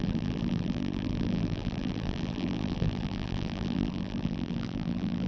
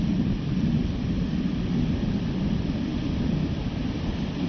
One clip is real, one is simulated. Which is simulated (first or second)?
first